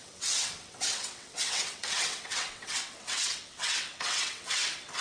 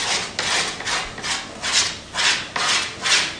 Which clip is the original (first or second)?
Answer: second